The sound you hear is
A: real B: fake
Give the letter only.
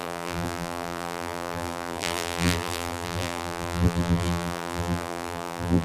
B